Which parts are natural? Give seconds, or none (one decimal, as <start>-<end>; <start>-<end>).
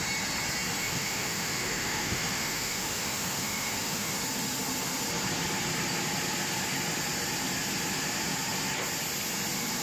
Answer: 0.0-0.8; 4.1-9.8